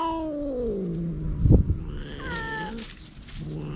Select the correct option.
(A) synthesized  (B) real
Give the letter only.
B